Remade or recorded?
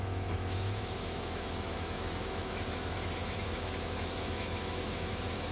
remade